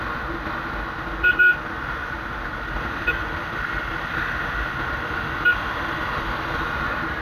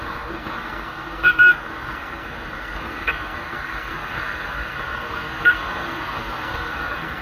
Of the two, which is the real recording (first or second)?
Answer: first